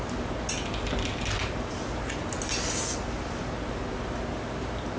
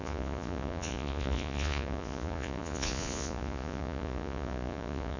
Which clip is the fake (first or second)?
second